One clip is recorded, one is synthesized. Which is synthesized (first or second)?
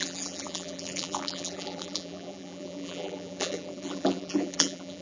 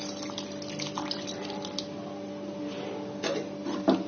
first